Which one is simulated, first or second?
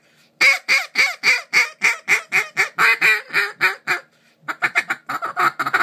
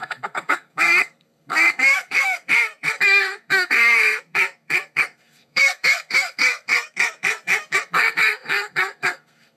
second